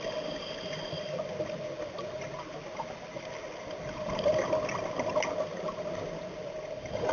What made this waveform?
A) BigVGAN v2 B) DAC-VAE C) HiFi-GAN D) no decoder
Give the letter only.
D